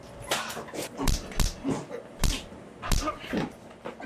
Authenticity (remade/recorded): recorded